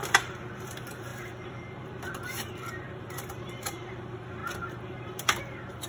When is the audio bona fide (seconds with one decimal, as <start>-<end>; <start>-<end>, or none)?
none